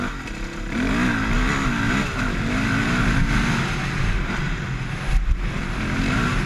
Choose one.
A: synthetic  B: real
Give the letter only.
B